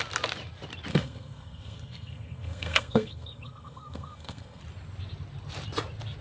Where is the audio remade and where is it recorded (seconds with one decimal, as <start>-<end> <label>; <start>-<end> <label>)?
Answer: 0.0-0.9 recorded; 0.9-4.6 remade; 4.6-6.2 recorded